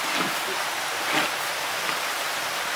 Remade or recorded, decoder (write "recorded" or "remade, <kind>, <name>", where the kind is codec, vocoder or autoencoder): recorded